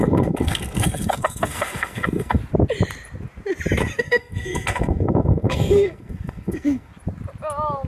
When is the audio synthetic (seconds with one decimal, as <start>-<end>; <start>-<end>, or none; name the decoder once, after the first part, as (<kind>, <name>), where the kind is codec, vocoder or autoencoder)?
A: 0.0-2.4 (codec, SNAC); 4.0-6.9